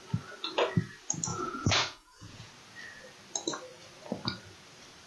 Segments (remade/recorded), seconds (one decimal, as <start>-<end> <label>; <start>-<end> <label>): 0.0-1.3 recorded; 1.3-2.5 remade; 2.5-5.1 recorded